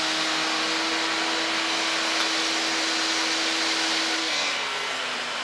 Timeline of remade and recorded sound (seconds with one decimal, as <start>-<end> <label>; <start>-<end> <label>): 0.0-4.2 recorded; 4.2-5.0 remade; 5.0-5.4 recorded